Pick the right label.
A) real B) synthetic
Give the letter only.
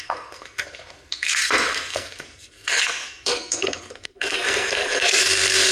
B